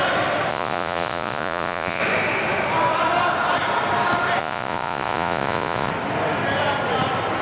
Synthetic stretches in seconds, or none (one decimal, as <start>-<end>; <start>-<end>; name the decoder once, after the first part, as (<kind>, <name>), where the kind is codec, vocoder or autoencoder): 0.5-2.0 (vocoder, Vocos); 4.4-5.9